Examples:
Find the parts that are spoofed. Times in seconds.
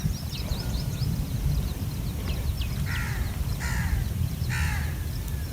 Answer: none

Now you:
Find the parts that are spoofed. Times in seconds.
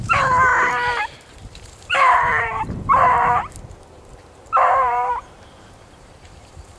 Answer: 0.0-0.5 (vocoder, BigVGAN v2); 1.3-6.8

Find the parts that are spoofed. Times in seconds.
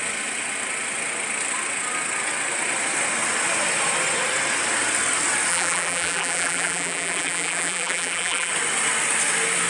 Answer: 5.5-8.5 (vocoder, BigVGAN v2)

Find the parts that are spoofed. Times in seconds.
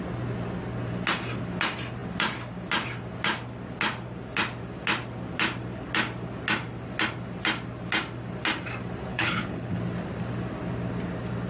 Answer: 9.1-9.8 (codec, HILCodec)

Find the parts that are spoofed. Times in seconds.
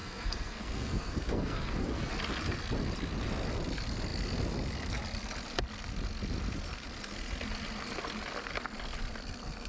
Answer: 0.0-2.1 (codec, SNAC)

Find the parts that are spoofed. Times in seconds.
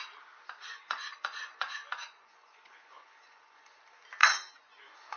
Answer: 0.7-3.8 (vocoder, Vocos); 4.2-5.2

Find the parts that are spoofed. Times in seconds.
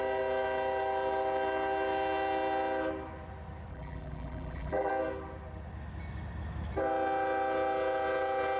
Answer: 3.7-4.9 (vocoder, BigVGAN v2)